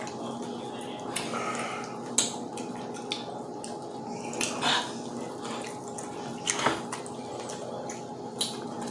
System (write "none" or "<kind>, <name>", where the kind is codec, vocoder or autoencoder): none